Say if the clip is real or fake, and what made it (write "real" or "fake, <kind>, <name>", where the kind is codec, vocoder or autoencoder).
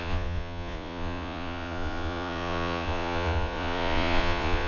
fake, vocoder, Vocos